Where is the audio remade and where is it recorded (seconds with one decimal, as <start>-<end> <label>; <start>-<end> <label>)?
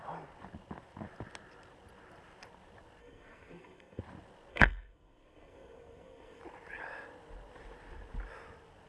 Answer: 0.0-3.0 recorded; 3.0-4.0 remade; 4.0-4.5 recorded; 4.5-6.4 remade; 6.4-8.9 recorded